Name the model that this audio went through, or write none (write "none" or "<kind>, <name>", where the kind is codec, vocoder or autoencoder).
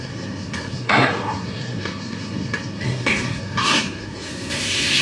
codec, SNAC